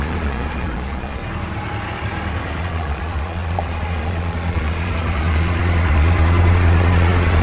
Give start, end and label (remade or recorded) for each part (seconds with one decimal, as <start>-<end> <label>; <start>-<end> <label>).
0.0-1.2 remade; 1.2-2.6 recorded; 2.6-7.4 remade